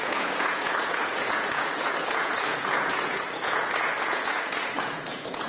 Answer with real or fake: fake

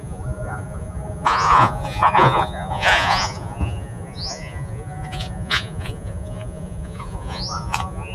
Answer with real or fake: fake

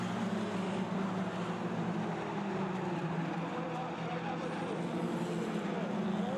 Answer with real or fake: real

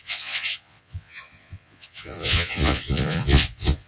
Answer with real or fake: fake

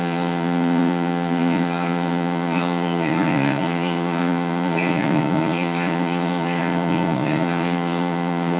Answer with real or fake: fake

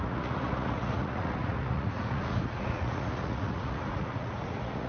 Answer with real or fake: fake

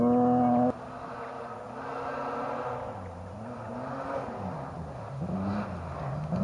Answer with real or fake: real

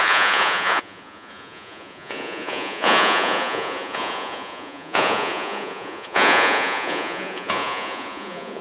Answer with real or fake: fake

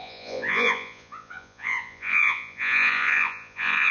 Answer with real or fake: fake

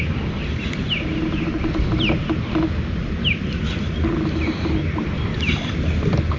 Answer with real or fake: real